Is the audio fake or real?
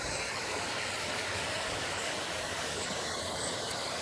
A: fake